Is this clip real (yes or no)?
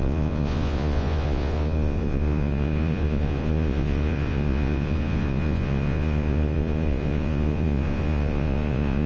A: no